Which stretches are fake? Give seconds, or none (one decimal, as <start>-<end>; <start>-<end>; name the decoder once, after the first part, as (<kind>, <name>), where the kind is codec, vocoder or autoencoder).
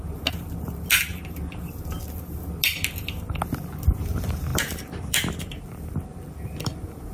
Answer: 4.5-5.4 (vocoder, BigVGAN v2)